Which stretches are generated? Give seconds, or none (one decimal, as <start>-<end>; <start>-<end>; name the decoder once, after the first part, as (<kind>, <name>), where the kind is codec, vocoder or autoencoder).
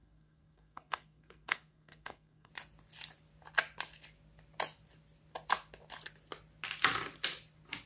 0.0-2.5 (codec, SNAC)